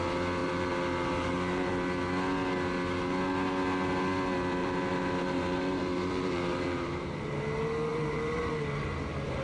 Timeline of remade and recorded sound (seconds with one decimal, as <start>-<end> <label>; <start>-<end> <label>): 0.0-0.4 recorded; 0.4-1.7 remade; 1.7-4.6 recorded; 4.6-7.4 remade; 7.4-7.9 recorded; 7.9-8.5 remade; 8.5-9.4 recorded